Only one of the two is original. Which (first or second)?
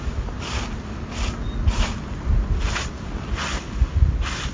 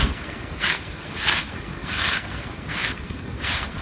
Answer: first